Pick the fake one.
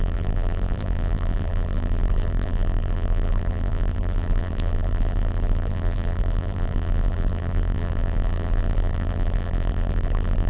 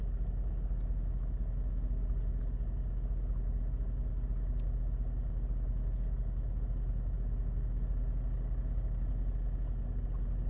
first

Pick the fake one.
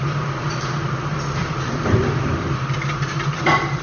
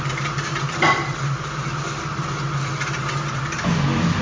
first